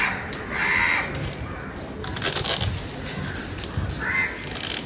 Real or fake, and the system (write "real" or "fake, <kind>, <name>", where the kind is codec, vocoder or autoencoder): real